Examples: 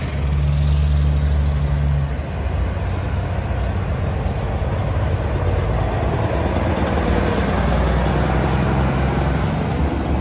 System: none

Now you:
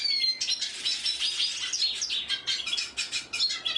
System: none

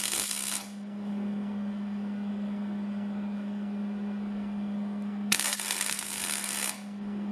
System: codec, SNAC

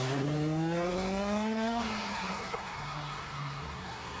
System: codec, SNAC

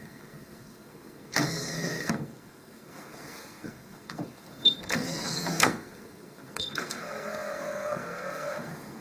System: codec, SNAC